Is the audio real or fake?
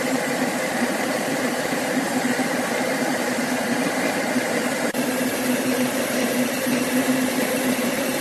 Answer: fake